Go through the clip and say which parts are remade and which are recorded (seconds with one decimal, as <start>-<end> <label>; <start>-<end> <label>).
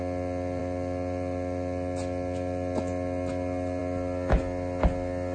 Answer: 0.0-5.3 recorded